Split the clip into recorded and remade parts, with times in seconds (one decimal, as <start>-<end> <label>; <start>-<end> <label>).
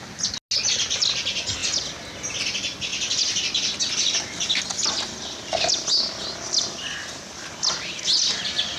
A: 0.0-8.8 recorded